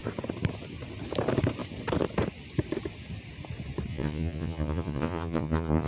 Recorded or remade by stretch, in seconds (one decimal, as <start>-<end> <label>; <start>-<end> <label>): 0.0-3.9 recorded; 3.9-5.9 remade